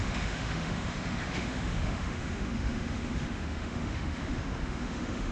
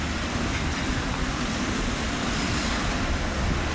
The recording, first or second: second